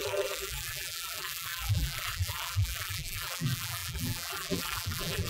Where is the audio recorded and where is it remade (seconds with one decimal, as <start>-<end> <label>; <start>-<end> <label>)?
0.0-5.3 remade